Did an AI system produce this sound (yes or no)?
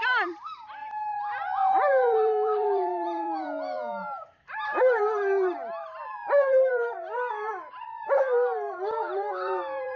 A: yes